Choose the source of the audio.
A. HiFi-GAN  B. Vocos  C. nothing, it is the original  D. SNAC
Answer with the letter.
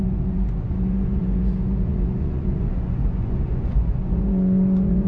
B